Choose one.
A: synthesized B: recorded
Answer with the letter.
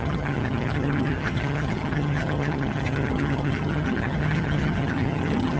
A